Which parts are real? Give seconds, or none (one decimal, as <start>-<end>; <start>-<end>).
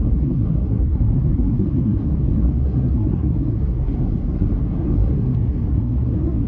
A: none